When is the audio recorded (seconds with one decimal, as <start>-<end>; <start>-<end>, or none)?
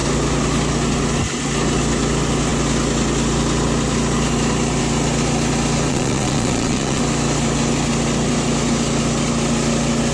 0.0-5.9; 7.0-10.1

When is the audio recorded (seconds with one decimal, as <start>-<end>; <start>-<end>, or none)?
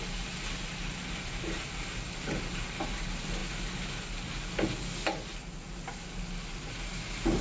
0.0-7.4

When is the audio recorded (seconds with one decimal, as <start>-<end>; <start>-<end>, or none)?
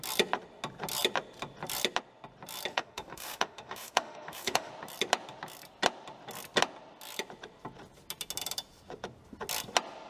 0.0-2.7; 4.7-10.1